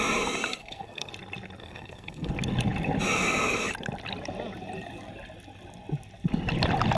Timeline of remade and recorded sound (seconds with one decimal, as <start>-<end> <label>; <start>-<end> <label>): 0.0-0.6 recorded; 0.6-1.1 remade; 1.1-1.6 recorded; 1.6-2.3 remade; 2.3-7.0 recorded